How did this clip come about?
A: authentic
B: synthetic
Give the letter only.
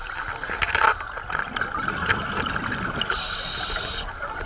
A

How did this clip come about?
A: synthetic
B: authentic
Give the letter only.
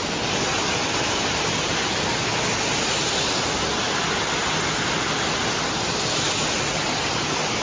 B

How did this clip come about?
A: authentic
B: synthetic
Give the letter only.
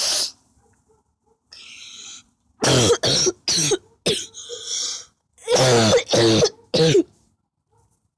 A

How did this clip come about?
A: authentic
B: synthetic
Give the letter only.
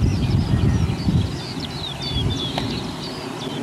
A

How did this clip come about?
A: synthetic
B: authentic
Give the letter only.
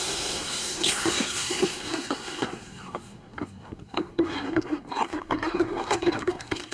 A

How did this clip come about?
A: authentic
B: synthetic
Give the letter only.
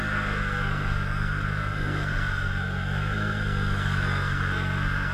B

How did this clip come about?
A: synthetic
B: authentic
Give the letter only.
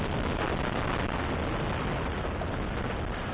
B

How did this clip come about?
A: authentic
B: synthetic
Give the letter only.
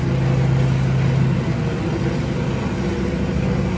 A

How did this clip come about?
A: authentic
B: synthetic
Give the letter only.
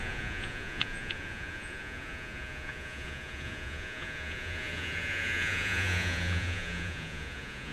B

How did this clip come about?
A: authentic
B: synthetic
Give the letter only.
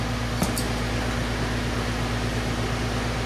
A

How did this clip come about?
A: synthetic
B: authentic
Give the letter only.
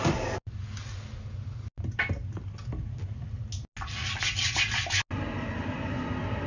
B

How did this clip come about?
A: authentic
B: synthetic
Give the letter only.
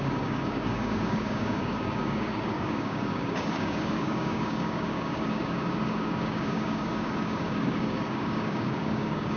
B